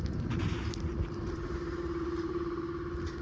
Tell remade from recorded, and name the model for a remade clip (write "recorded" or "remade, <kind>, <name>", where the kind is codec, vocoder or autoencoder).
remade, vocoder, BigVGAN v2